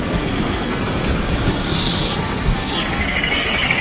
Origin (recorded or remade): remade